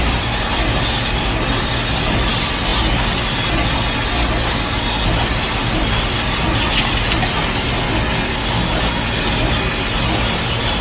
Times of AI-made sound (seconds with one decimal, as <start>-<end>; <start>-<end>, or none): none